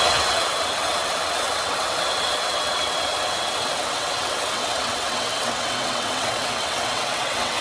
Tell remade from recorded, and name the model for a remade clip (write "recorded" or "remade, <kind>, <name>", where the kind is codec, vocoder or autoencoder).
remade, vocoder, WaveNeXt